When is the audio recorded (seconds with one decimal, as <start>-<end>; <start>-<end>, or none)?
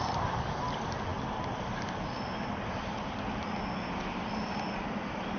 0.0-5.4